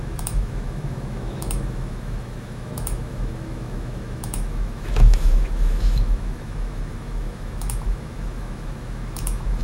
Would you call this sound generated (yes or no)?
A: yes